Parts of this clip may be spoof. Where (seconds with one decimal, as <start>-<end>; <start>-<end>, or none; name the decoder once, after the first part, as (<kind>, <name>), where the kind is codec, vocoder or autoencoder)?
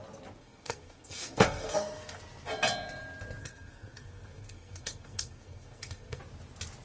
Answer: 0.4-2.2 (codec, SNAC); 3.4-6.2